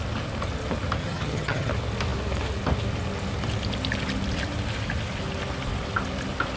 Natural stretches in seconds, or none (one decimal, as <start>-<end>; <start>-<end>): 0.0-1.0; 1.7-6.6